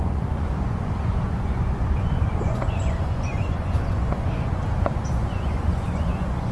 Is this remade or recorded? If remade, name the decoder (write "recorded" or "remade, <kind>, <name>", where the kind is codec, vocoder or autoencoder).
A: remade, vocoder, Vocos